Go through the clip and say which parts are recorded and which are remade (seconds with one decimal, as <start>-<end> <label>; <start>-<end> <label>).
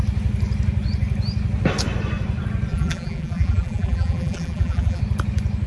0.0-2.7 recorded; 2.7-5.0 remade; 5.0-5.7 recorded